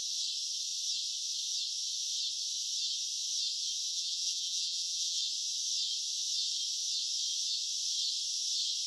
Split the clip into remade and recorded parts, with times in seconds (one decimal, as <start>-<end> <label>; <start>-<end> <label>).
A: 0.0-3.9 recorded; 3.9-5.2 remade; 5.2-8.9 recorded